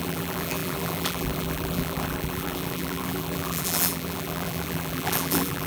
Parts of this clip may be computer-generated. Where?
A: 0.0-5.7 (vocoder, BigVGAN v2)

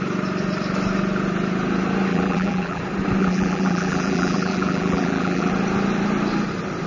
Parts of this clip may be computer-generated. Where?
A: 2.1-2.8 (vocoder, BigVGAN v2); 3.2-5.5

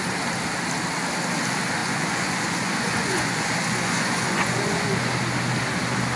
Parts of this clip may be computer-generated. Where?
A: 1.8-5.1 (vocoder, Vocos)